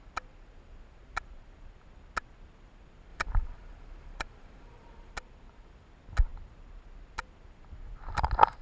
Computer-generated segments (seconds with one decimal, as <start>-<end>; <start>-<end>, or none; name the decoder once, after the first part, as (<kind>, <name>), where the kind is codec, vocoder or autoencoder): 3.1-5.1 (vocoder, BigVGAN v2)